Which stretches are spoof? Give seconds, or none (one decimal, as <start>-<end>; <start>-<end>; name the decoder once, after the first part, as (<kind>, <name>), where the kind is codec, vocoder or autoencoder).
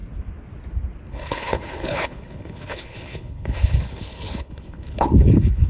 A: 1.1-5.7 (codec, HILCodec)